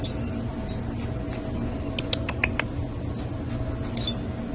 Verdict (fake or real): real